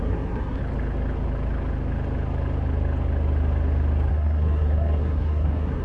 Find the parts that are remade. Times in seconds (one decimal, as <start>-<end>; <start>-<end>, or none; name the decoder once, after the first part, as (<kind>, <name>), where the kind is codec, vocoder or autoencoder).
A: 0.0-0.6 (codec, SNAC); 4.1-5.8